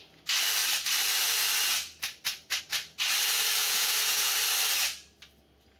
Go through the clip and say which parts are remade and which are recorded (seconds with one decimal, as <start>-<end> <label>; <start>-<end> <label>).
0.0-3.6 recorded; 3.6-4.3 remade; 4.3-5.8 recorded